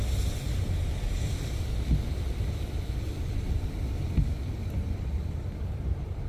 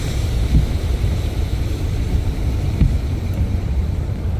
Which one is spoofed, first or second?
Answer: second